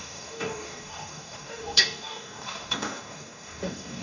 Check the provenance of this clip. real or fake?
fake